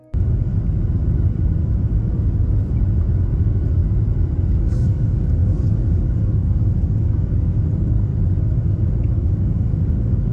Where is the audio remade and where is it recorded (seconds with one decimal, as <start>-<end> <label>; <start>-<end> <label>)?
0.0-0.5 remade; 0.5-3.4 recorded; 3.4-3.8 remade; 3.8-4.6 recorded; 4.6-8.1 remade; 8.1-8.7 recorded; 8.7-10.3 remade